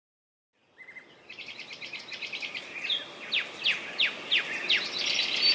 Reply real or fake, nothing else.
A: real